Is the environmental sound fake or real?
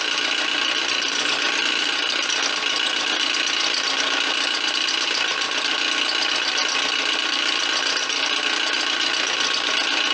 real